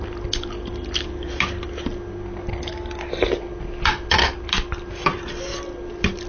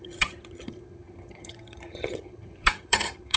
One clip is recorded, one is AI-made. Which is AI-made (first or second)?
second